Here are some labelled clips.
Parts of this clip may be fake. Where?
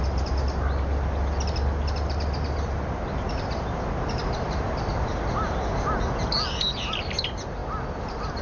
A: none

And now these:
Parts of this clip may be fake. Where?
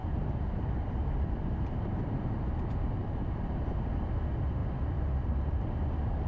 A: 0.0-2.3 (vocoder, BigVGAN v2); 4.6-5.6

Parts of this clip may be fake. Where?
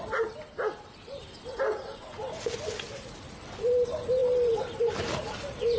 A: 0.0-5.8 (vocoder, BigVGAN v2)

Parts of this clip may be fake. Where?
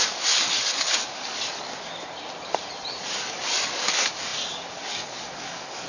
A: 0.0-1.9 (codec, DAC); 3.1-5.9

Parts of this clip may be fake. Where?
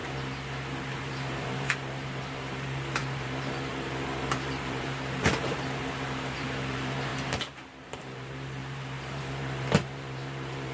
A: 1.0-7.1 (vocoder, BigVGAN v2); 7.8-10.7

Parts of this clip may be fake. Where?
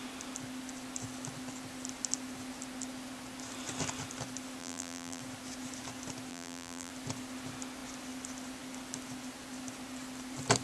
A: 4.6-5.2 (vocoder, BigVGAN v2); 6.3-6.9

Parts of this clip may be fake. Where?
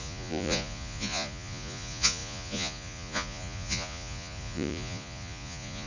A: 0.0-5.9 (vocoder, Vocos)